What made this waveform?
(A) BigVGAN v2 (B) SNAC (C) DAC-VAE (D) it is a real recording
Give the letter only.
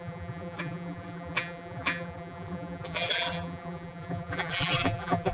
A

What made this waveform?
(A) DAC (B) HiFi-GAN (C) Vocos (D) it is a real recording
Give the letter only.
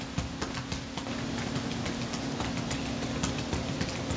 D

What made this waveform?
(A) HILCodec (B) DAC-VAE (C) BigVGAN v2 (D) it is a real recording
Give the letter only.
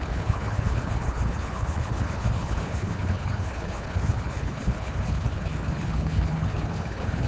A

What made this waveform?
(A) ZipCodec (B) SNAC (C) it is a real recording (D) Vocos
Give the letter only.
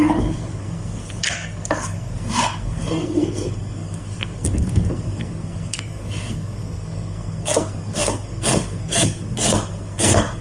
B